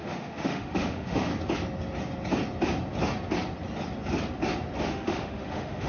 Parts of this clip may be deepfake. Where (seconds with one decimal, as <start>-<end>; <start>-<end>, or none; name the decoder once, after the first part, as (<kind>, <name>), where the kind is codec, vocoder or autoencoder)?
0.0-1.3 (autoencoder, DAC-VAE); 4.8-5.9